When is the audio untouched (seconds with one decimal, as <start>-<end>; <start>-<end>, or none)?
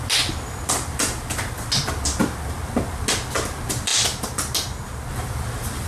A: 0.0-5.9